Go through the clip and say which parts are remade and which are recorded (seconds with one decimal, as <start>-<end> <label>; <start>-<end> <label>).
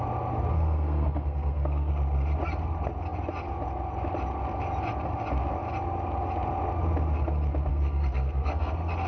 0.0-0.5 recorded; 0.5-1.9 remade; 1.9-7.7 recorded; 7.7-8.7 remade; 8.7-9.1 recorded